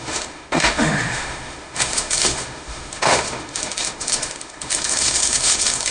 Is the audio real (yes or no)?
no